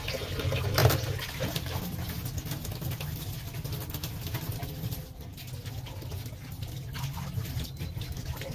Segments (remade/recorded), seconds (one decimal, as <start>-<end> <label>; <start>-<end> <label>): 0.0-0.8 recorded; 0.8-1.8 remade; 1.8-8.5 recorded